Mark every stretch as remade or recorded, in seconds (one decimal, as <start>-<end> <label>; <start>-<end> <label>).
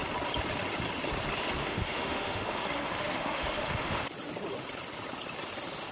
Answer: 0.0-1.6 recorded; 1.6-4.1 remade; 4.1-5.9 recorded